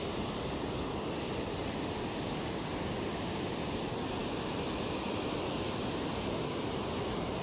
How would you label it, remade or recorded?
recorded